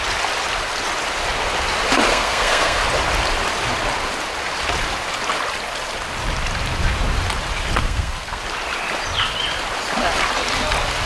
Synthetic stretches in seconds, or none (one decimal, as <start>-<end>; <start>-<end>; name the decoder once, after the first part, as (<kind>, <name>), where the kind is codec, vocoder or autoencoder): 2.1-2.8 (codec, SNAC); 7.8-8.4